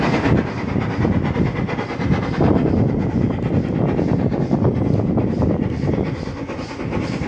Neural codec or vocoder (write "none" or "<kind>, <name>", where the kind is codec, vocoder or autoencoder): none